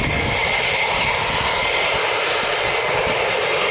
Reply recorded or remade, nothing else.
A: recorded